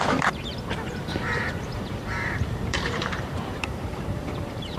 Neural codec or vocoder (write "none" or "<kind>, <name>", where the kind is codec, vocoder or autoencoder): vocoder, BigVGAN v2